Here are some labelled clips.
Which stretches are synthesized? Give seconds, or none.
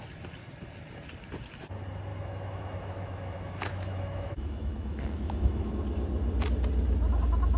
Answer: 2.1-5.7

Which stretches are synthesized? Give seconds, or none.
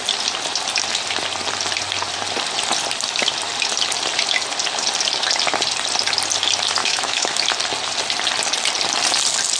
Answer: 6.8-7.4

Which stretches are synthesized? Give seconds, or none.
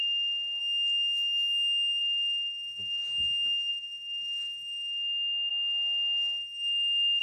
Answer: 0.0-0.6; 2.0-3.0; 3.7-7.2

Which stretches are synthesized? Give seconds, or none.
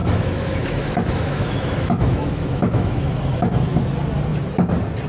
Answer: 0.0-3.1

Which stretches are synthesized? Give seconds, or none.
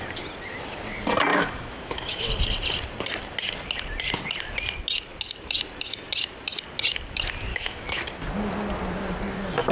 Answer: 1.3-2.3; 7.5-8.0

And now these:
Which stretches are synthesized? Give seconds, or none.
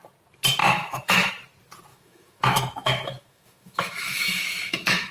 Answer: 0.6-1.3; 1.9-5.1